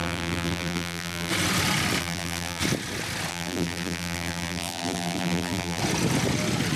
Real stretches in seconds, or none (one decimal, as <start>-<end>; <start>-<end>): 1.3-2.0; 2.6-3.3; 5.8-6.8